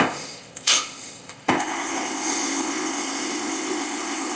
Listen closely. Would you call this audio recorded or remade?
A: remade